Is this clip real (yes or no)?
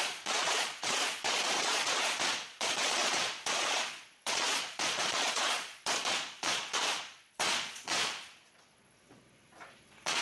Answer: no